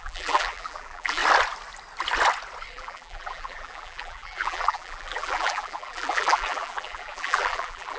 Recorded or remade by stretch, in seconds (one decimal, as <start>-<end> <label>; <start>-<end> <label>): 0.0-1.2 remade; 1.2-2.7 recorded; 2.7-8.0 remade